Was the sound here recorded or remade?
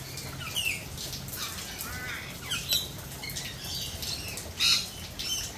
recorded